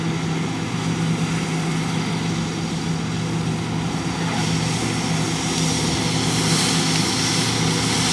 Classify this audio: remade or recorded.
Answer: recorded